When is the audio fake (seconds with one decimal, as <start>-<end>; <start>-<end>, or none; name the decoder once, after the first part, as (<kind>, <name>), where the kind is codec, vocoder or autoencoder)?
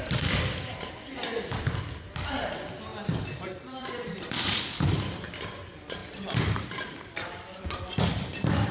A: 2.9-4.5 (vocoder, BigVGAN v2); 6.0-7.9